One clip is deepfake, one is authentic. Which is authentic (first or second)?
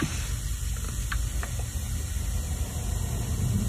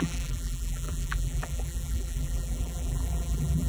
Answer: first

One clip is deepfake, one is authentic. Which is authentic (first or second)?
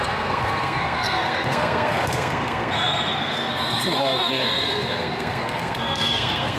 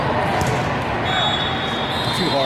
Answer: second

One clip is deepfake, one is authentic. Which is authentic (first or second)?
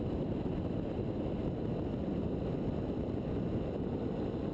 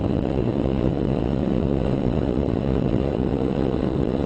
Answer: first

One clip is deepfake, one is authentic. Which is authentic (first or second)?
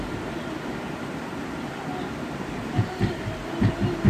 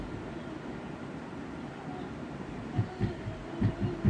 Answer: second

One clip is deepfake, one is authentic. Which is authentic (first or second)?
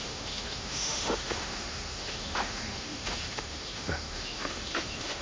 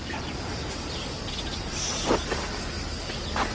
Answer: second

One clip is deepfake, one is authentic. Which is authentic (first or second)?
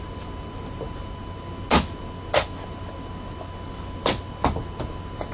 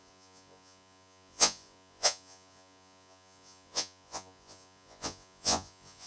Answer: first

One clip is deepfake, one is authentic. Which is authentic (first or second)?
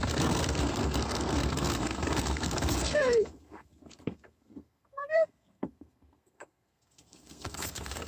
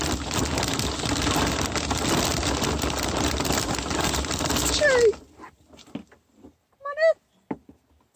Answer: second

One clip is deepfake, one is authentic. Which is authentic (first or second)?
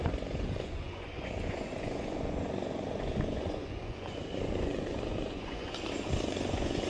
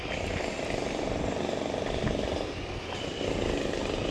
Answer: second